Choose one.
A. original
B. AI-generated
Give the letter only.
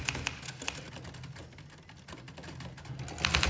A